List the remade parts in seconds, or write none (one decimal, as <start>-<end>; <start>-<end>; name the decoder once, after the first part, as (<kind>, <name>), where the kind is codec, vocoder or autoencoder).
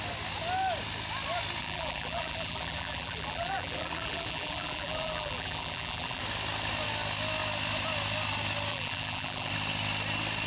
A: 1.6-6.2 (vocoder, BigVGAN v2); 8.7-9.5